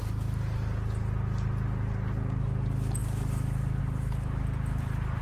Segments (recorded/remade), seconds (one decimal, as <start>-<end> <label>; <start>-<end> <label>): 0.0-5.2 recorded